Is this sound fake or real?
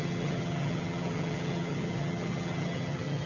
fake